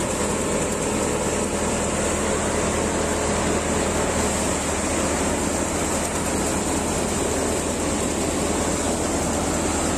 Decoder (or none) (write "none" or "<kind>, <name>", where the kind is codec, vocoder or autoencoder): none